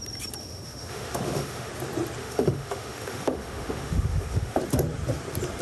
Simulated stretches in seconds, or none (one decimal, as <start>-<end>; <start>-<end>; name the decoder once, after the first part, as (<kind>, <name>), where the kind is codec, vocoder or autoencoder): 0.4-1.7 (autoencoder, DAC-VAE); 2.2-4.6